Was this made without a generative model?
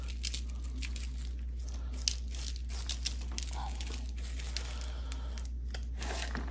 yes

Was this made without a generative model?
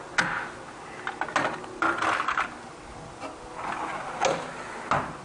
yes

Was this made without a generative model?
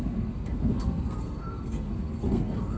no